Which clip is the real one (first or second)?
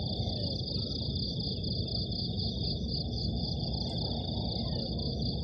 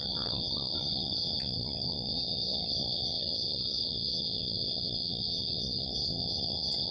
first